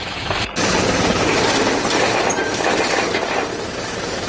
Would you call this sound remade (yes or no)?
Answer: yes